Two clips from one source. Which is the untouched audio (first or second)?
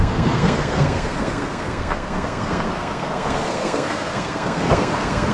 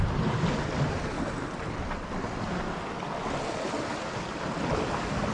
second